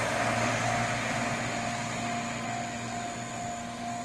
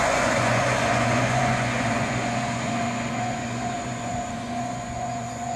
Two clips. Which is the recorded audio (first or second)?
first